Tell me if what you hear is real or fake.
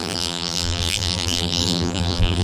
fake